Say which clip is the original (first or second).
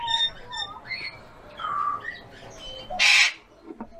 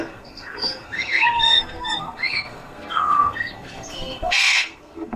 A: first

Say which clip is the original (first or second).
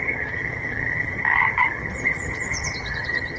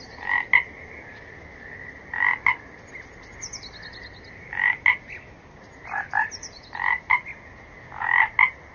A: second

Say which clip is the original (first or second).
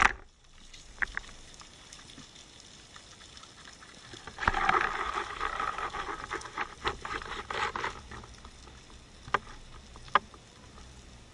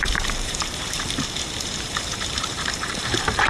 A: first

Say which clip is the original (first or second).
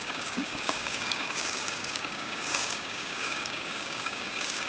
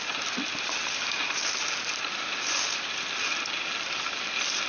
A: second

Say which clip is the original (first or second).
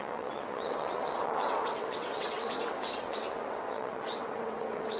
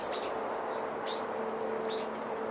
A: second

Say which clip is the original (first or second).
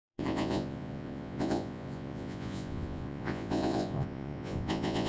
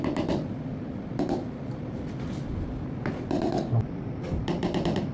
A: second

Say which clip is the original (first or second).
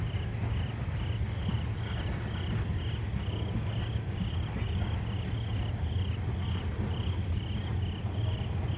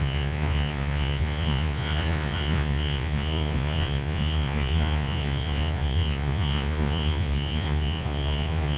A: first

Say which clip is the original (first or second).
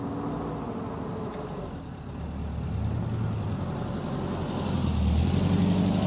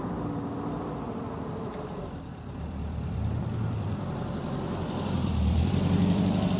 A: first